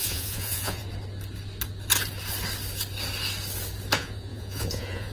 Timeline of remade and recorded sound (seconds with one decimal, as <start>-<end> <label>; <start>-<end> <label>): 0.0-0.8 remade; 0.8-3.9 recorded; 3.9-5.1 remade